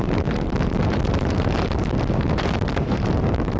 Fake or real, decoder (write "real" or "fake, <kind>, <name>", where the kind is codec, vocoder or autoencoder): fake, vocoder, BigVGAN v2